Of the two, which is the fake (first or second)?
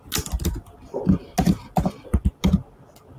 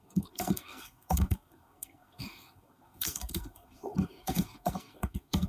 second